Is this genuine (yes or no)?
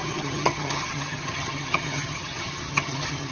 no